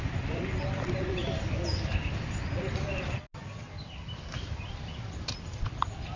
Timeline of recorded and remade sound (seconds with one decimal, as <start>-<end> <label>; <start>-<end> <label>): 0.0-6.2 recorded